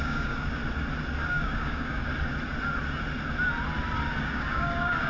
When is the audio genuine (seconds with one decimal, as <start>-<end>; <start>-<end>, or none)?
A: 0.6-1.3; 2.1-4.2